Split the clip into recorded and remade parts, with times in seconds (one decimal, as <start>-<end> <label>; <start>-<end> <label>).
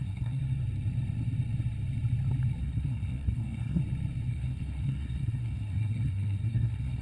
0.0-0.4 remade; 0.4-2.6 recorded; 2.6-3.8 remade; 3.8-4.3 recorded; 4.3-7.0 remade